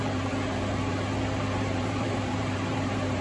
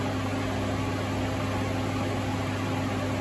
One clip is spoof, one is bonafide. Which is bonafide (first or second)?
second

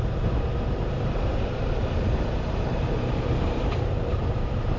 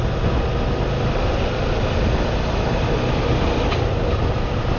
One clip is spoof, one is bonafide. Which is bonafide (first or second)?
second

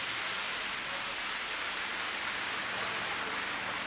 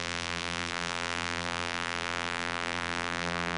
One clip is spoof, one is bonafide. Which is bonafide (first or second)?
first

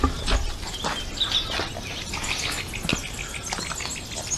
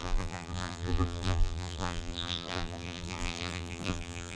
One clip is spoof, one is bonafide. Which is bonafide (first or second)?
first